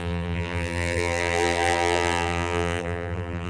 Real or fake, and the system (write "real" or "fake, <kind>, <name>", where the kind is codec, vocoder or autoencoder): fake, vocoder, BigVGAN v2